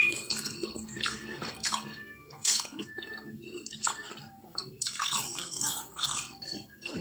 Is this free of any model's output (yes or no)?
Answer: no